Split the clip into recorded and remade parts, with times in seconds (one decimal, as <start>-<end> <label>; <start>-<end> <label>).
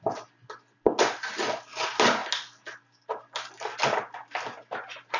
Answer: 0.0-5.2 recorded